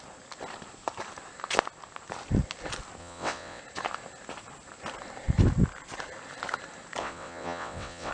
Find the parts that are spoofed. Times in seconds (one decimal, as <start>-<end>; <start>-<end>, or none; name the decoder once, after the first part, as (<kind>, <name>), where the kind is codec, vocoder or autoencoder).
3.0-3.6 (vocoder, WaveNeXt); 7.0-8.1